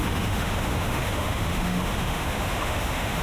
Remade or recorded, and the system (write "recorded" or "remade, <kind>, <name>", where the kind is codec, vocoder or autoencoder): remade, autoencoder, DAC-VAE